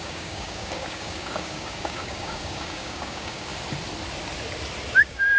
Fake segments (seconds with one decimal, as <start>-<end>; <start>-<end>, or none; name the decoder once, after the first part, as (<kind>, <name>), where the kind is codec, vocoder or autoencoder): 0.0-3.5 (codec, DAC); 5.0-5.4

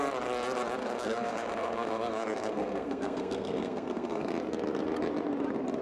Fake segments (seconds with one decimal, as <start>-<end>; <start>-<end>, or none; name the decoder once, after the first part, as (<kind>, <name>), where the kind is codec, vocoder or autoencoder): 0.8-4.3 (codec, SNAC)

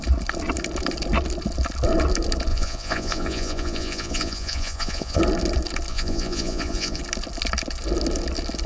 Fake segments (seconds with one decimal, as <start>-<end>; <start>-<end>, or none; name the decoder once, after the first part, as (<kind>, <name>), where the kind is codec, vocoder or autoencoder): 2.5-5.2 (vocoder, Vocos); 5.9-7.0

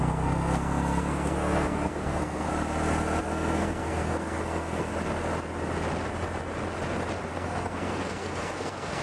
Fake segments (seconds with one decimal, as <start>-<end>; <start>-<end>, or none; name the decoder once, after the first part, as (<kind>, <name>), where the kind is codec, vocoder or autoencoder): 0.0-2.5 (codec, SNAC); 3.2-4.9; 7.3-9.0

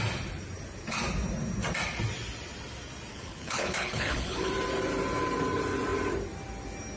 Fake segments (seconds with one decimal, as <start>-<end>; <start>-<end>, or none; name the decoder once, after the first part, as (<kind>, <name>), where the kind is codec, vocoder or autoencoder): 3.1-4.5 (codec, HILCodec)